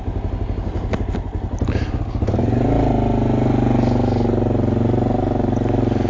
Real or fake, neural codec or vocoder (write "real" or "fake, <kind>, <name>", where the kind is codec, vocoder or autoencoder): real